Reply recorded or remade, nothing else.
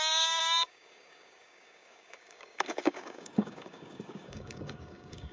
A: remade